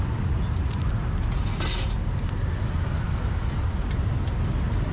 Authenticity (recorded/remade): recorded